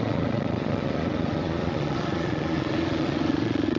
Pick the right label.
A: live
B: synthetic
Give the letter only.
B